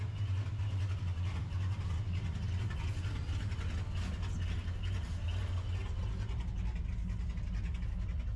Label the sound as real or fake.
real